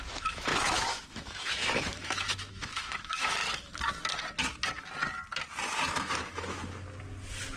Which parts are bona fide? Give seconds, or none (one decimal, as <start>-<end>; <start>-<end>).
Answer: 3.4-6.0; 6.6-7.6